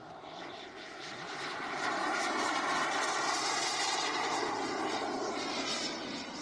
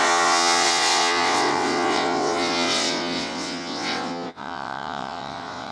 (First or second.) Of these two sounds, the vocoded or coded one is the second